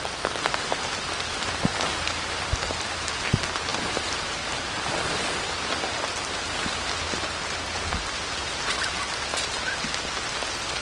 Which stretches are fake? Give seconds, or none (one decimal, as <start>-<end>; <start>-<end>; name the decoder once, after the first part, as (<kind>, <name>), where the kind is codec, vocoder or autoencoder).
none